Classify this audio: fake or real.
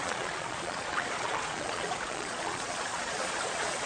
fake